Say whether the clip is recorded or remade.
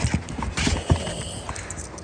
recorded